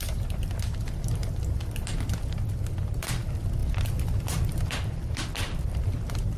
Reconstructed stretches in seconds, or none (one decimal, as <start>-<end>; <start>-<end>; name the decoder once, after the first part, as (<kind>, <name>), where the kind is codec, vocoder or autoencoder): 0.0-1.2 (vocoder, BigVGAN v2); 3.1-3.6; 4.7-6.4